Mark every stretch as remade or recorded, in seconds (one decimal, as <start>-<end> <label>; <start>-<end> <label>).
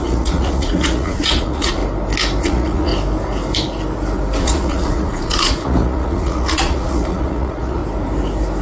0.0-1.8 remade; 1.8-2.4 recorded; 2.4-2.9 remade; 2.9-4.4 recorded; 4.4-7.8 remade; 7.8-8.6 recorded